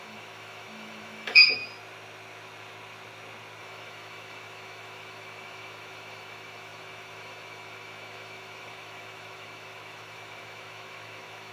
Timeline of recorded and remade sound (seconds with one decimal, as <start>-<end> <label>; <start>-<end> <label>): 0.0-1.6 remade; 1.6-3.6 recorded; 3.6-11.5 remade